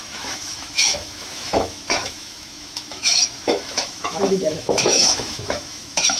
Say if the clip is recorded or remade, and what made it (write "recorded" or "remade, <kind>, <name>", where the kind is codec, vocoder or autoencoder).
remade, autoencoder, DAC-VAE